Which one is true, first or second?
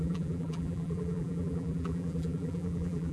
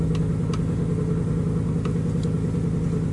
second